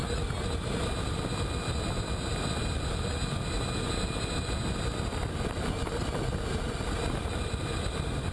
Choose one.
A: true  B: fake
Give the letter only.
A